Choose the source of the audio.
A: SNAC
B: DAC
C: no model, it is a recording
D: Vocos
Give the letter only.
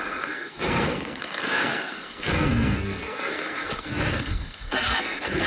A